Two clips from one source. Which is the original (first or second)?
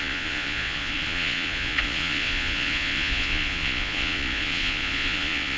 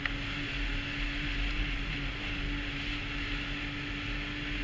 second